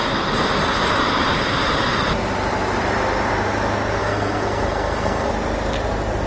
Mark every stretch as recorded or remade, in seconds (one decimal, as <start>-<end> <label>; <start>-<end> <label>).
0.0-4.0 recorded; 4.0-5.3 remade; 5.3-6.3 recorded